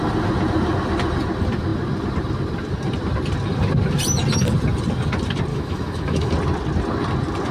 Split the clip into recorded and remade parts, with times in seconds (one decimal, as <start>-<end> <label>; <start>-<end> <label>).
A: 0.0-5.5 recorded; 5.5-6.3 remade; 6.3-7.5 recorded